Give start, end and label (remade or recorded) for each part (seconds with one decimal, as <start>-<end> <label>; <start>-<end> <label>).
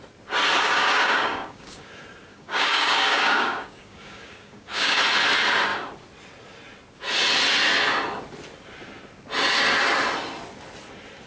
0.0-0.7 recorded; 0.7-1.9 remade; 1.9-2.3 recorded; 2.3-5.0 remade; 5.0-11.3 recorded